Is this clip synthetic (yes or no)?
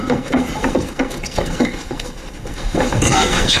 yes